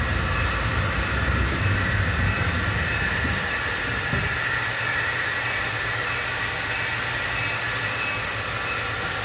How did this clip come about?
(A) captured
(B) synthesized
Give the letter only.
A